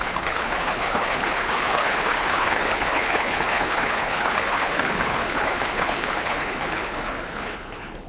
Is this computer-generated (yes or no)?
yes